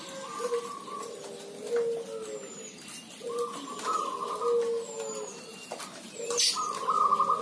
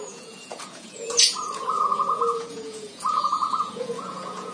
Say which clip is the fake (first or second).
second